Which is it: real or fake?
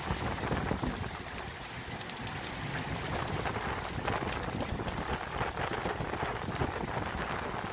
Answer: real